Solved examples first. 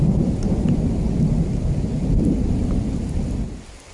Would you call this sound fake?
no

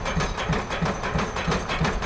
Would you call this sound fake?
no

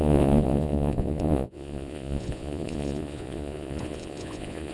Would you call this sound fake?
yes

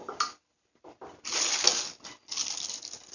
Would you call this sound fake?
no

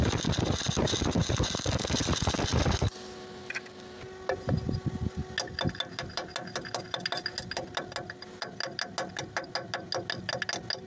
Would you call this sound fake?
no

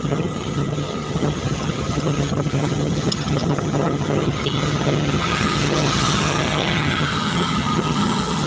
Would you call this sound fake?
yes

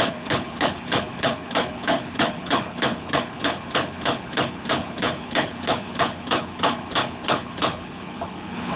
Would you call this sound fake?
yes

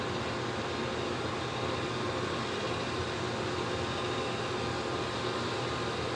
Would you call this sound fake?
no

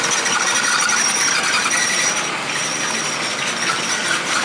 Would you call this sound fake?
no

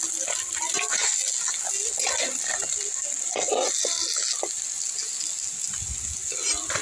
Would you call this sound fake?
no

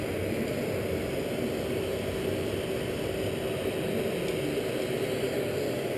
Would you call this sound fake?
yes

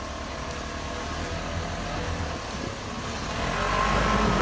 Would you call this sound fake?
no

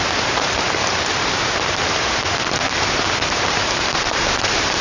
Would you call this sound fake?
yes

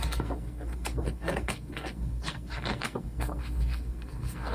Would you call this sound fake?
yes